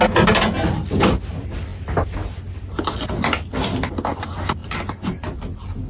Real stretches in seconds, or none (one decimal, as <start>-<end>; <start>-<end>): 0.0-5.9